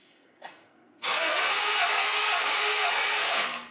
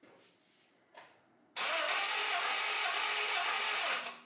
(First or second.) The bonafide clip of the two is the second